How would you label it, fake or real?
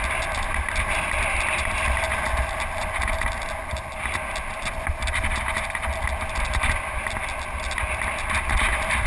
real